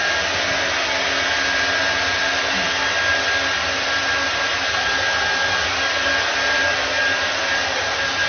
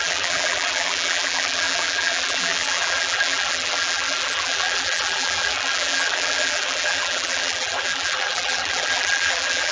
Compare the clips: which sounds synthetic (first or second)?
second